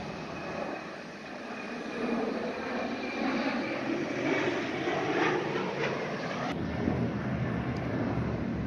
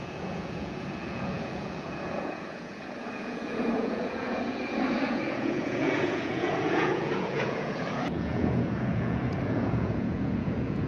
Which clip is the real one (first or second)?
first